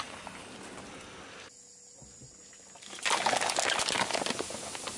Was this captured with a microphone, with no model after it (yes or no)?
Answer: yes